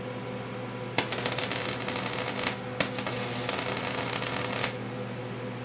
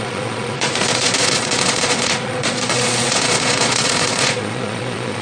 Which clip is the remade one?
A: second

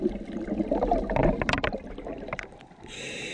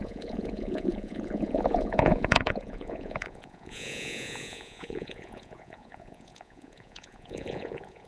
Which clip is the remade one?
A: second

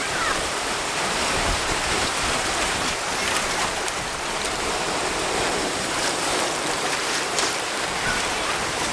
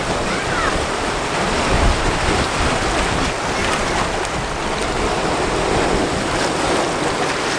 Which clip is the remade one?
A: first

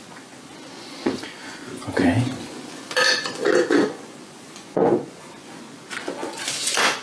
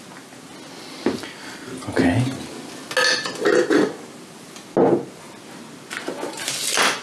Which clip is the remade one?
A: first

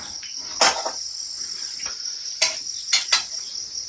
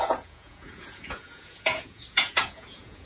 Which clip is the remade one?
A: second